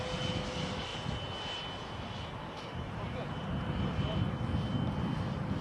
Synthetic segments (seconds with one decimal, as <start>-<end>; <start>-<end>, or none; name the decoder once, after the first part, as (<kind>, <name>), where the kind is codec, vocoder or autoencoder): none